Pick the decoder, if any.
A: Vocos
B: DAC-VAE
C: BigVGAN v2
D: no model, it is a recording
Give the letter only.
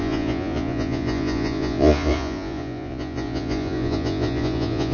A